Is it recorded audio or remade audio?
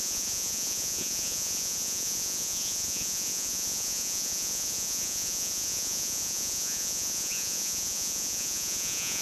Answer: remade